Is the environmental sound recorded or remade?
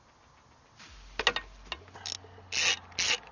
recorded